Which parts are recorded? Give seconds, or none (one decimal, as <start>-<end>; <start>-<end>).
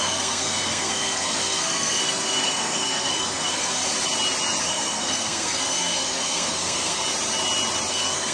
3.8-4.6; 7.0-7.9